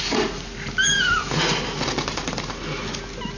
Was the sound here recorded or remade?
recorded